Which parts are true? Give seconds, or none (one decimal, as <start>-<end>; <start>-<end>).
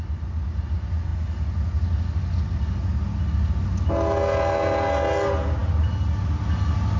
0.0-7.0